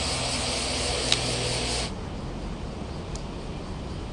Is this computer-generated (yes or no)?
no